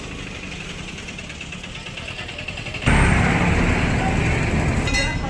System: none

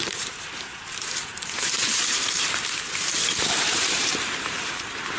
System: vocoder, BigVGAN v2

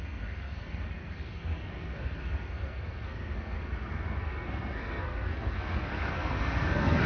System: codec, SNAC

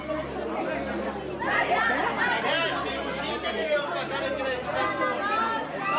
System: none